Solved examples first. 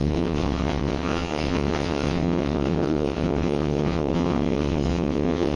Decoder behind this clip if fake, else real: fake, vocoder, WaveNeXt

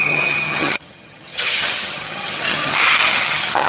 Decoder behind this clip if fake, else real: fake, vocoder, HiFi-GAN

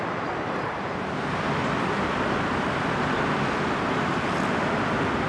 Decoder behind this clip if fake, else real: real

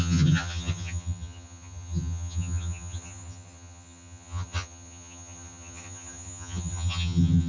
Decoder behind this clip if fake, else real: fake, vocoder, HiFi-GAN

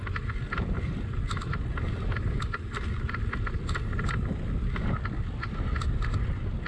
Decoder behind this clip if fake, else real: real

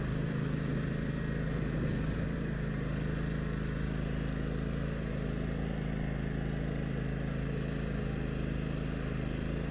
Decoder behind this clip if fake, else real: real